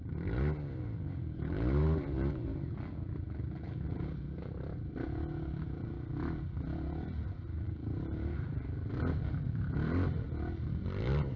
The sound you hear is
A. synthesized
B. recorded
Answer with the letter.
A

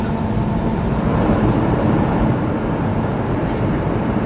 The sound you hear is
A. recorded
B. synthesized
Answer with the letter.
B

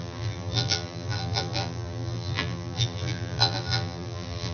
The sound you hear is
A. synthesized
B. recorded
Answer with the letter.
A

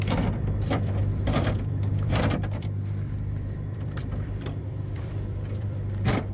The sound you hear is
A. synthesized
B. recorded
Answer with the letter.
A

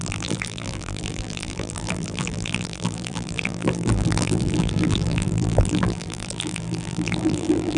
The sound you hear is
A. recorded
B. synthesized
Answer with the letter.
B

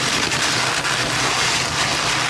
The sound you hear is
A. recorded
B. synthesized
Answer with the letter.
A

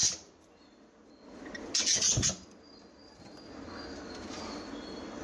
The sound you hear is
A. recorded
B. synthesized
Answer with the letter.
A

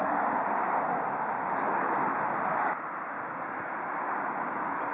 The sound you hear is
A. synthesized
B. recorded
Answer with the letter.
A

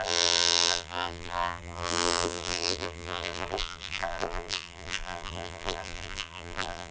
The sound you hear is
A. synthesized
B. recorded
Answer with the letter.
A